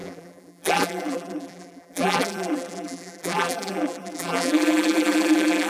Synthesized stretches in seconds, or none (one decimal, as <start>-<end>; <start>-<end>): 0.0-5.7